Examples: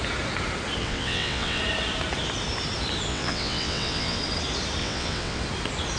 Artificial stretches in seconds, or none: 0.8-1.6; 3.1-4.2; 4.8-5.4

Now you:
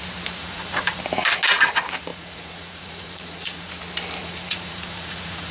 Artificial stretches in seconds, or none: 0.4-1.0; 2.1-3.7; 4.2-5.5

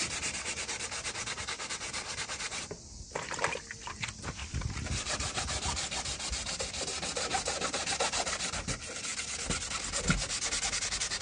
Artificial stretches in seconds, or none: 0.0-7.3; 8.0-9.1; 10.3-11.2

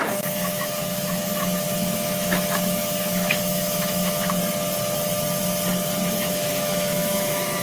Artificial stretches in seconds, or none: 0.0-4.4; 6.0-7.6